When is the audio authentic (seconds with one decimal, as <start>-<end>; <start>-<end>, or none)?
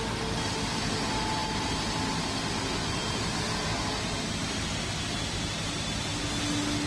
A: 0.0-6.9